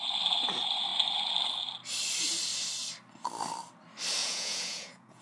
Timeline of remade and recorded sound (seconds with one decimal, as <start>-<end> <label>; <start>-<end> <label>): 0.0-4.2 recorded; 4.2-5.2 remade